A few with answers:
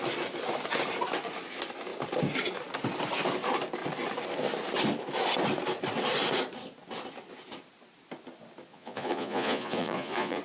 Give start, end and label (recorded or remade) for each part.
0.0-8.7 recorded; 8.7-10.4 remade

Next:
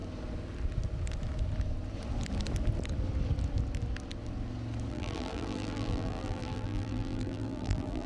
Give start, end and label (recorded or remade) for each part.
0.0-4.9 recorded; 4.9-8.1 remade

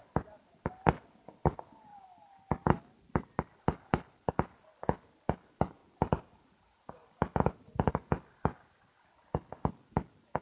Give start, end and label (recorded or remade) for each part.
0.0-10.4 recorded

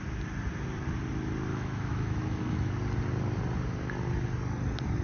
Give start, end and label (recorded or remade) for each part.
0.0-1.5 recorded; 1.5-2.7 remade; 2.7-5.0 recorded

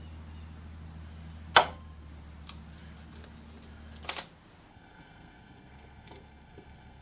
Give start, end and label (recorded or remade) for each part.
0.0-4.7 recorded; 4.7-7.0 remade

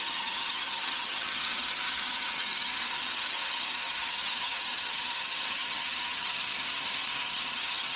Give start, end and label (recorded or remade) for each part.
0.0-8.0 remade

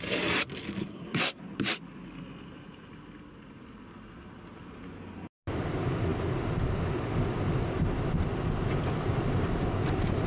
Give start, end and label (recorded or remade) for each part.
0.0-0.8 recorded; 0.8-1.4 remade; 1.4-10.3 recorded